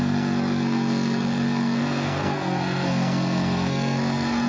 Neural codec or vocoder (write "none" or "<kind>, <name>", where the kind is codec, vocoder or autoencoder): codec, SNAC